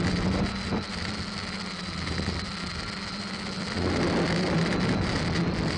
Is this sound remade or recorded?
recorded